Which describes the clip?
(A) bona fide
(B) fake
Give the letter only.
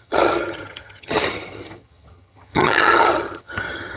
B